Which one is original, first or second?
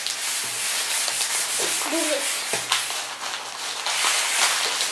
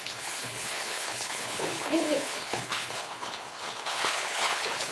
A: first